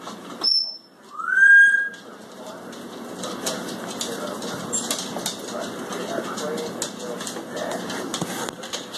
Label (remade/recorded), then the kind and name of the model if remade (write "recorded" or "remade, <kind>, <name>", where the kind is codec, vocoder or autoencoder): recorded